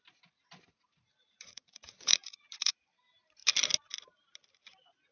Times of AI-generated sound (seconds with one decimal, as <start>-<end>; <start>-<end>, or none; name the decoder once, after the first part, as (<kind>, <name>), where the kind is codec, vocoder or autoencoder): 1.1-2.8 (vocoder, Vocos)